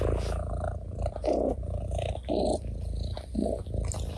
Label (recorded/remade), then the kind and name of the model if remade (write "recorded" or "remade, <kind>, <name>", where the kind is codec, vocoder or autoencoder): recorded